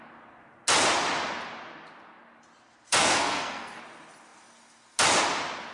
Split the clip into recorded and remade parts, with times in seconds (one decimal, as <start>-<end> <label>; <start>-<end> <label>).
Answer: 0.0-3.0 recorded; 3.0-3.8 remade; 3.8-5.7 recorded